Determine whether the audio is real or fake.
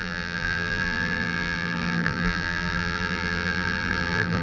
fake